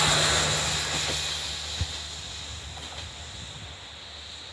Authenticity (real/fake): real